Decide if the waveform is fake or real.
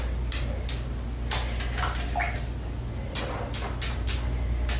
real